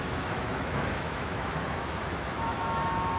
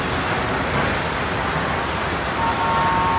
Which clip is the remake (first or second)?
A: first